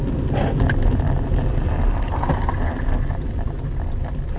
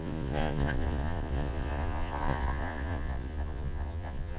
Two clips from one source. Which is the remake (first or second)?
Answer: second